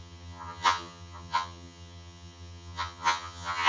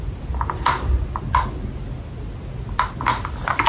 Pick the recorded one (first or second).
second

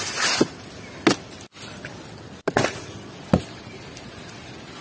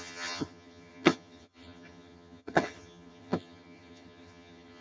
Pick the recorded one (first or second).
first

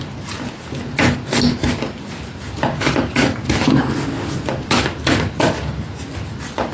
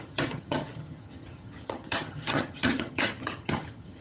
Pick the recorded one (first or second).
first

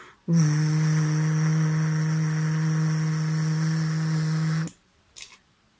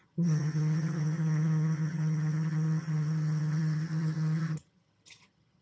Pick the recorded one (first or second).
first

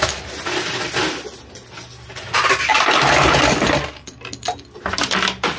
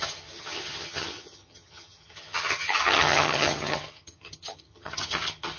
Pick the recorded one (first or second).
first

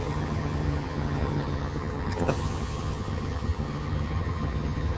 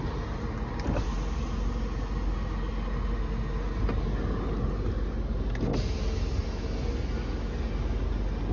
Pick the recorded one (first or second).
second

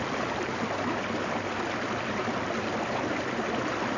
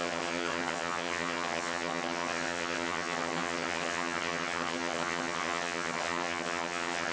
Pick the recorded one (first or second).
first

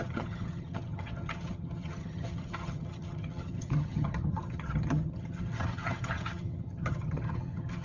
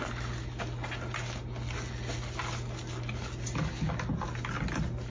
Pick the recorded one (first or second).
second